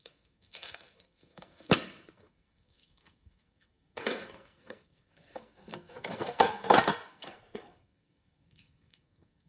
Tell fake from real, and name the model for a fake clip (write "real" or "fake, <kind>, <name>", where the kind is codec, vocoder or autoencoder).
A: fake, codec, SNAC